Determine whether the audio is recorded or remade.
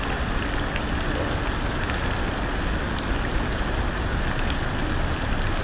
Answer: recorded